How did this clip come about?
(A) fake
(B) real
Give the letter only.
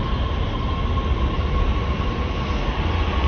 B